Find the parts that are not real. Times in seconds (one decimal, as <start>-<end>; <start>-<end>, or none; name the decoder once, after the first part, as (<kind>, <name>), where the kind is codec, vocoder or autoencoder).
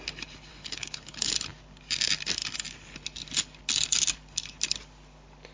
0.5-1.3 (codec, HILCodec)